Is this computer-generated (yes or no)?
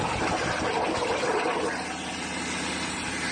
no